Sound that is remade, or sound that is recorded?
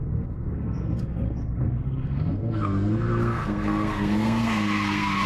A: remade